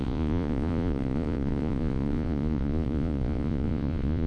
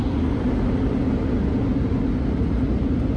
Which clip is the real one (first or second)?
second